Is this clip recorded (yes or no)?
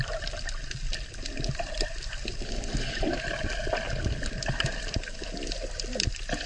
yes